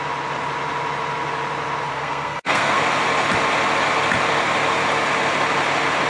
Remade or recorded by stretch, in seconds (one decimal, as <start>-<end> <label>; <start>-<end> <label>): 0.0-1.9 recorded; 1.9-2.8 remade; 2.8-6.1 recorded